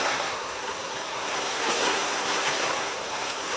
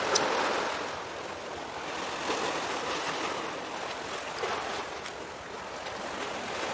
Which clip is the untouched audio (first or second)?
second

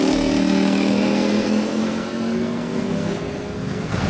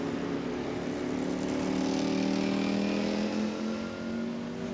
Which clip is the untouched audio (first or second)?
second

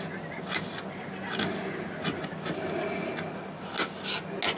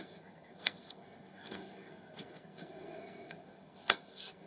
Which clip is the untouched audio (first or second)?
first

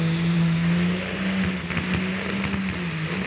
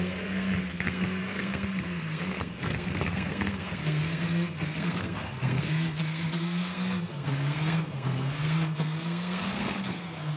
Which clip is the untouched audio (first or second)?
first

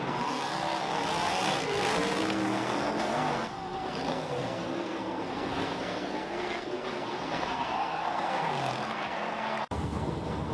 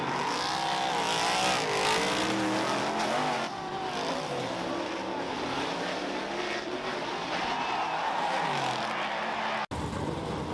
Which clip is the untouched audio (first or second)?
second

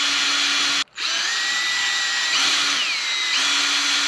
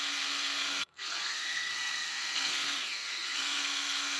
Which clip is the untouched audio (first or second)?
first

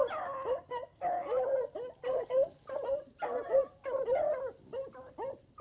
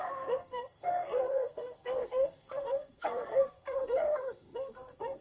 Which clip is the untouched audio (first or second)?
first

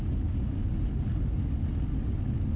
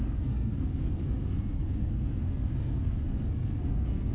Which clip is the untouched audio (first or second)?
first